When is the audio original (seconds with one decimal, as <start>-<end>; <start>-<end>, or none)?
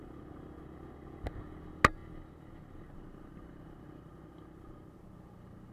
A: 0.0-5.7